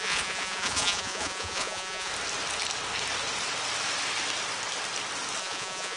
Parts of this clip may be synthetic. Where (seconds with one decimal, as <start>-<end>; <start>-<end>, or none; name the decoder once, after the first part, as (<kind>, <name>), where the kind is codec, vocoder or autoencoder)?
0.0-2.1 (vocoder, Vocos); 5.4-6.0